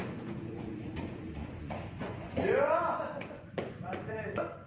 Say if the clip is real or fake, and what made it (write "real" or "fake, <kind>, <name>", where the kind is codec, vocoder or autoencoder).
fake, vocoder, Vocos